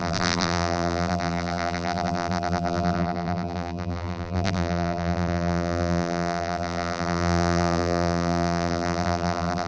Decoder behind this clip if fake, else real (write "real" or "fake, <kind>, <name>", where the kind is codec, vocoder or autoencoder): fake, vocoder, BigVGAN v2